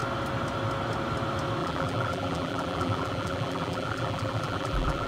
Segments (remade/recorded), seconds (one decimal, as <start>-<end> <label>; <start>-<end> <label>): 0.0-1.6 recorded; 1.6-5.1 remade

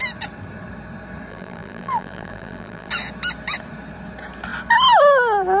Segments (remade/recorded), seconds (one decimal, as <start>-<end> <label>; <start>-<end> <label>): 0.0-1.3 recorded; 1.3-2.9 remade; 2.9-5.6 recorded

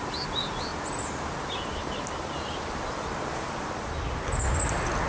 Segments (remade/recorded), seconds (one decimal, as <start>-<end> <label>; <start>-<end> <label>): 0.0-5.1 recorded

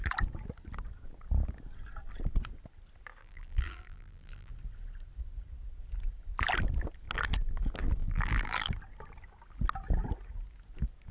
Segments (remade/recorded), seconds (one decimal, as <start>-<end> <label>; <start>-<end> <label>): 0.0-3.2 recorded; 3.2-4.5 remade; 4.5-8.0 recorded; 8.0-8.7 remade; 8.7-11.1 recorded

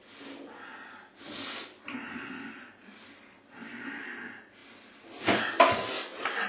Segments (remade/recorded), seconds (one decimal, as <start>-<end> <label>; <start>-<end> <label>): 0.0-6.5 recorded